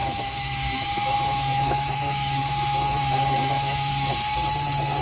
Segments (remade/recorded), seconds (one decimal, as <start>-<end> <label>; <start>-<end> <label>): 0.0-3.9 remade; 3.9-5.0 recorded